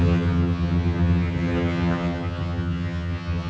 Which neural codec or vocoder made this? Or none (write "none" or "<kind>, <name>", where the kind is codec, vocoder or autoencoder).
vocoder, HiFi-GAN